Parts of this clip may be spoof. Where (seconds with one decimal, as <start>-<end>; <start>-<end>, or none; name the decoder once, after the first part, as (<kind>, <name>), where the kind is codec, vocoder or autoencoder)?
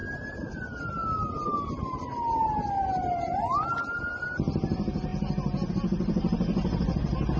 none